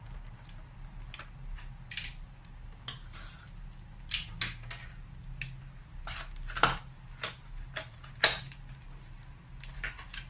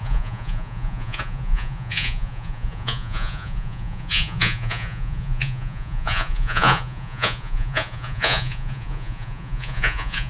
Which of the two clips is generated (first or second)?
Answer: second